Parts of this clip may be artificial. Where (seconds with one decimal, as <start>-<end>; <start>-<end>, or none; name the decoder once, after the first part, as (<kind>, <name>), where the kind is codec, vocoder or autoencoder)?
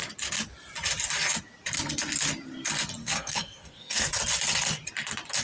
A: 3.0-4.1 (codec, SNAC)